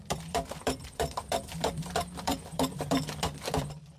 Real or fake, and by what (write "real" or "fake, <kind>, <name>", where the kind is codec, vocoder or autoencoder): fake, vocoder, BigVGAN v2